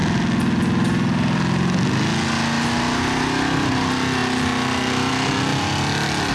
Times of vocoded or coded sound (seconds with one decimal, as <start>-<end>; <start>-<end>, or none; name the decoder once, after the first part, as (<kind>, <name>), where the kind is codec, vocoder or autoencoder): none